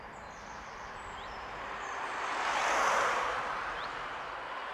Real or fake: fake